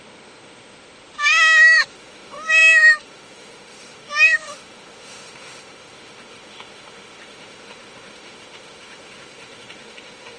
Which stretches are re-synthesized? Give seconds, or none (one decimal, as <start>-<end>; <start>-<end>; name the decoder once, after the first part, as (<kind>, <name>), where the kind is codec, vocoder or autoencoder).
0.0-10.4 (autoencoder, DAC-VAE)